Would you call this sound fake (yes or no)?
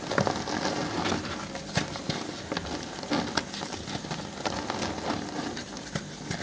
no